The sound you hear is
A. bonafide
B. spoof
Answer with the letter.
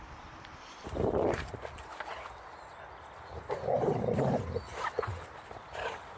B